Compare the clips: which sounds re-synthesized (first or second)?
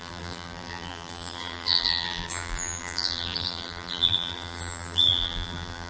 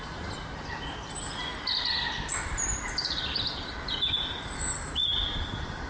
first